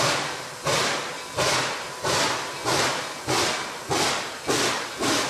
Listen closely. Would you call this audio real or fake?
real